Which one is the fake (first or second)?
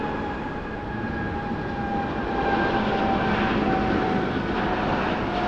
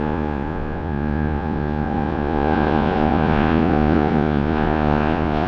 second